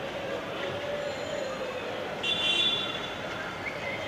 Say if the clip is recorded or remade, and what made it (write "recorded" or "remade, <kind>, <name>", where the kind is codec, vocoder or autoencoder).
recorded